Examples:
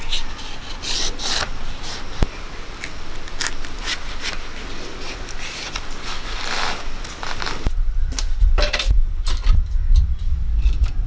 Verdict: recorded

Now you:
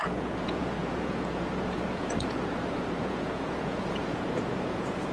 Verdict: remade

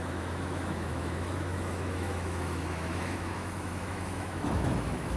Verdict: remade